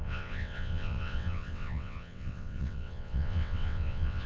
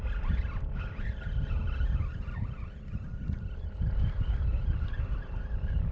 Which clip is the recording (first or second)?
second